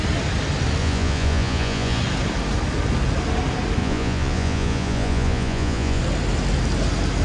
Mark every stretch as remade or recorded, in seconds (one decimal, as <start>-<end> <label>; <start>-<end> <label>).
0.0-0.8 recorded; 0.8-2.0 remade; 2.0-3.8 recorded; 3.8-6.0 remade; 6.0-7.2 recorded